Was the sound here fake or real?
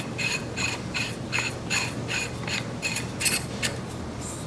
real